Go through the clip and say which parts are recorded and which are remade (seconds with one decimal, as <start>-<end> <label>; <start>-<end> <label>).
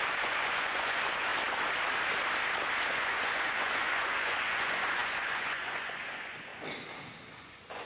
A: 0.0-1.3 remade; 1.3-2.9 recorded; 2.9-6.5 remade; 6.5-7.4 recorded; 7.4-7.9 remade